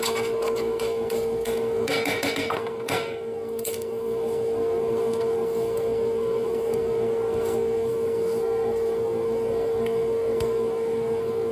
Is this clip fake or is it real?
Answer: fake